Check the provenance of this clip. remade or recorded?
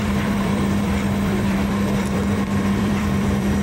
remade